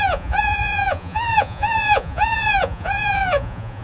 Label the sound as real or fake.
fake